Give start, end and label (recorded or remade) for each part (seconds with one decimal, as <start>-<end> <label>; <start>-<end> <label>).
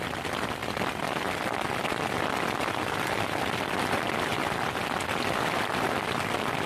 0.0-4.3 remade; 4.3-6.2 recorded; 6.2-6.7 remade